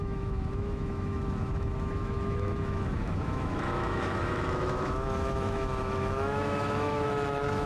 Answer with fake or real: fake